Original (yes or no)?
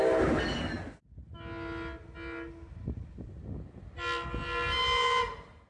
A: yes